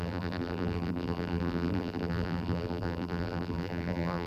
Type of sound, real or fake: fake